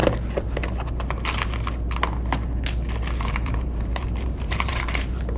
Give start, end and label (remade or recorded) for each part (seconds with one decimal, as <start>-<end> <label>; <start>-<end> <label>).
0.0-3.2 recorded; 3.2-5.4 remade